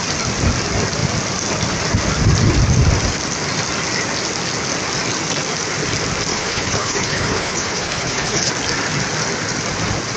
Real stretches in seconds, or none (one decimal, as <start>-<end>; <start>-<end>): 0.0-6.3; 8.5-10.2